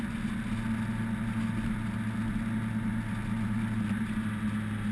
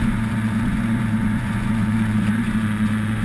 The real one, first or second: first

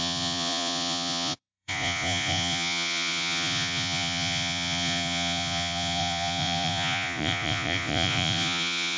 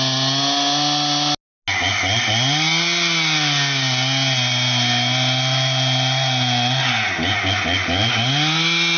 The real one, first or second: second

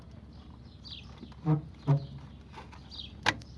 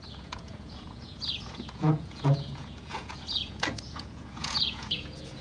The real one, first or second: first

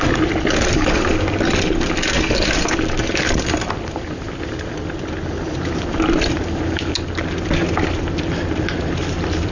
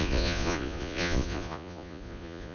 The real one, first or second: first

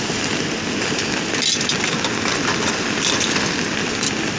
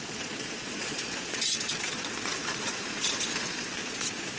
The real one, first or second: first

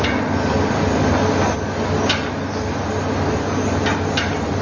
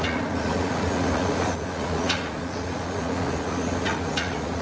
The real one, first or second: first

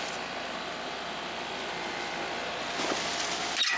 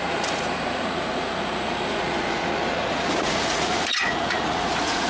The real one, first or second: first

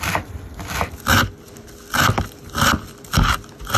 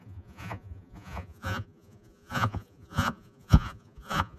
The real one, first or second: first